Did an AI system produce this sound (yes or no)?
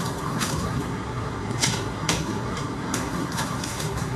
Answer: yes